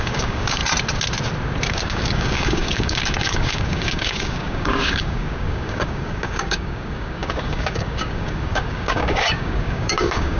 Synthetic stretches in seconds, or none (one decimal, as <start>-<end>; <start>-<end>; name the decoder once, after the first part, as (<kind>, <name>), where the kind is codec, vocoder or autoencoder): 0.0-0.6 (codec, DAC); 1.7-10.4